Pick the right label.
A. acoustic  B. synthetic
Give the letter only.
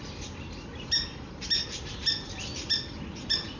A